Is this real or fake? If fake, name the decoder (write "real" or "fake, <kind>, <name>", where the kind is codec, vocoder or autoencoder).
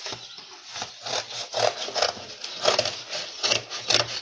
real